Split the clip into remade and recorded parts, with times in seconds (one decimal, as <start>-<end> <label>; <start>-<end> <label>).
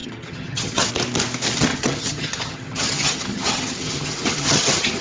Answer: 0.0-0.9 remade; 0.9-1.7 recorded; 1.7-5.0 remade